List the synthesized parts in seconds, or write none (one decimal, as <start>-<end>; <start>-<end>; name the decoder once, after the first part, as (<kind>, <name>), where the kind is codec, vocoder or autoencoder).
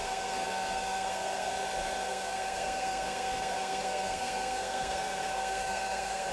0.0-1.5 (codec, SNAC); 2.1-6.3